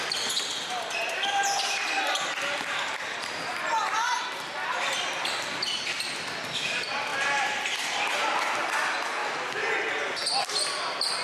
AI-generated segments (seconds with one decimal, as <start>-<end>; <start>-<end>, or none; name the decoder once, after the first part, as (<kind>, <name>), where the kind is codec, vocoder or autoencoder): none